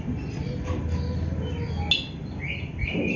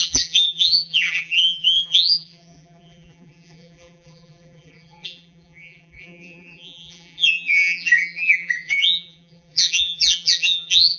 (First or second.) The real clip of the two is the first